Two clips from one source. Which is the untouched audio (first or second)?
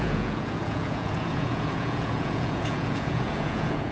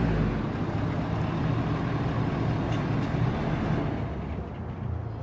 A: second